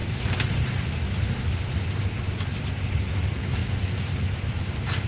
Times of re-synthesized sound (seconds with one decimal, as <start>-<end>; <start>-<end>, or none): none